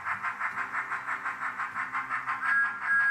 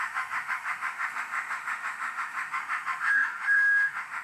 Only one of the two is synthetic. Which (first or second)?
second